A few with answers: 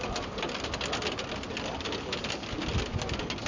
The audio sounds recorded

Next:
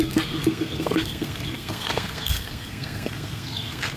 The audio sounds remade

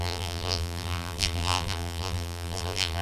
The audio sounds remade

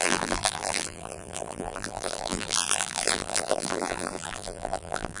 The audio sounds remade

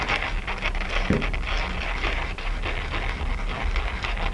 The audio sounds recorded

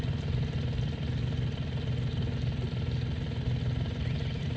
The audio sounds recorded